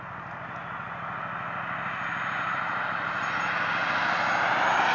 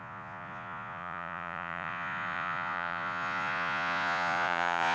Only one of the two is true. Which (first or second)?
first